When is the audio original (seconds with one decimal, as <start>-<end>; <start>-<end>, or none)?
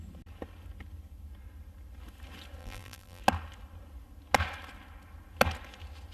0.0-2.6; 3.2-6.1